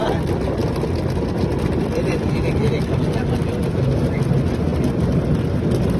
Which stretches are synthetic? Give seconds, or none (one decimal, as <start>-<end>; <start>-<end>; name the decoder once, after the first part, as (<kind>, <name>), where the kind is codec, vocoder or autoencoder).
none

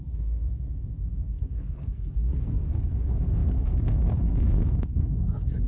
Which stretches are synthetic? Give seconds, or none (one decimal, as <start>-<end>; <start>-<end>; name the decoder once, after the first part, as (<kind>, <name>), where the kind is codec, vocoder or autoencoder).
0.0-5.7 (codec, SNAC)

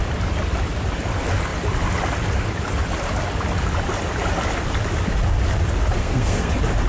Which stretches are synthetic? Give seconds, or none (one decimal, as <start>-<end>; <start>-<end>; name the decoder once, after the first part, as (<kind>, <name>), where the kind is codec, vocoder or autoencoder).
6.0-6.5 (codec, SNAC)

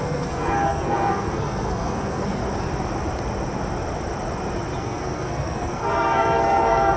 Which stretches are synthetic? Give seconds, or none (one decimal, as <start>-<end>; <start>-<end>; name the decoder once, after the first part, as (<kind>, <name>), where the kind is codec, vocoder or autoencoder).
0.0-2.4 (codec, SNAC); 4.8-7.0

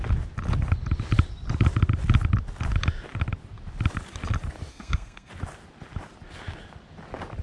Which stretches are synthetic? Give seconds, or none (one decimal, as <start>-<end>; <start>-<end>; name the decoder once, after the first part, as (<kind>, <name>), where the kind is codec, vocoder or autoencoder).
4.7-5.3 (codec, SNAC)